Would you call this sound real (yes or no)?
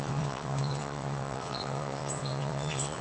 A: no